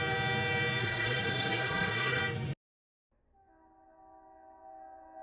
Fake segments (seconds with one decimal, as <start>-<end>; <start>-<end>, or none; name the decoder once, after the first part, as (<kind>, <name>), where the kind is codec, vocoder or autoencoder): 0.8-2.2 (codec, SNAC)